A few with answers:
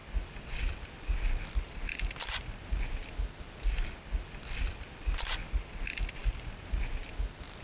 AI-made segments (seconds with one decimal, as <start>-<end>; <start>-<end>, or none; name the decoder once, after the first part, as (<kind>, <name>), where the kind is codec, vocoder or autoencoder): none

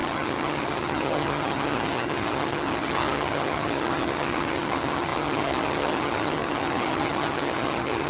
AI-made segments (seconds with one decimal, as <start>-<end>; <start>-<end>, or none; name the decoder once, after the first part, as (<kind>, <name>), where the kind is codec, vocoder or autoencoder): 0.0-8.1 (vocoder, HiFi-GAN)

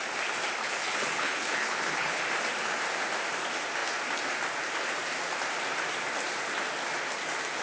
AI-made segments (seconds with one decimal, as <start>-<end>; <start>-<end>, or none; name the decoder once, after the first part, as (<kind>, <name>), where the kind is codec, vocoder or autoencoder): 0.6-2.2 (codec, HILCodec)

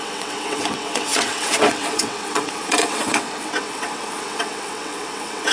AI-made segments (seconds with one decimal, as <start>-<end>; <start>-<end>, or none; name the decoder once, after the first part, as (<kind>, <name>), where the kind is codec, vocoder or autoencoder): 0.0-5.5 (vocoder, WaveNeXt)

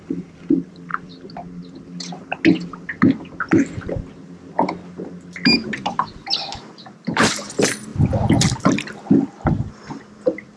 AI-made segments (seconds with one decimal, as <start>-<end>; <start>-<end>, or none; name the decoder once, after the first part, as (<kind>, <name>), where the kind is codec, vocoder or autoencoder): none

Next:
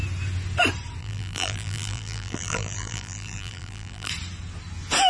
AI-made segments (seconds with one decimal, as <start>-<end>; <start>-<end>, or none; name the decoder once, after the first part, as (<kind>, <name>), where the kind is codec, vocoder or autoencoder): 1.0-4.1 (vocoder, BigVGAN v2)